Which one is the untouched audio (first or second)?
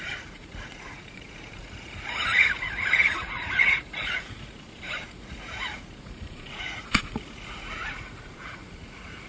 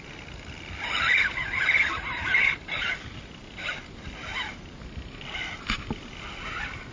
second